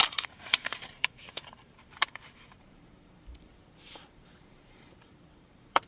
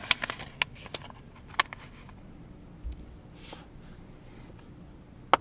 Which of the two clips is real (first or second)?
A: second